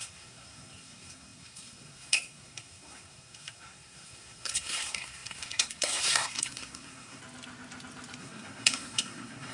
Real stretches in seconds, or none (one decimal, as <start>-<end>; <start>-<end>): 7.2-8.2